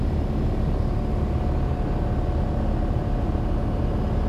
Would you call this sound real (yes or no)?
yes